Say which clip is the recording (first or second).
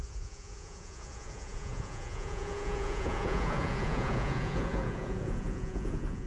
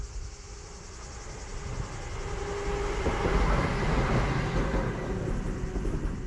second